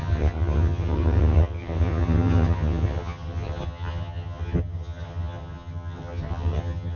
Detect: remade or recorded remade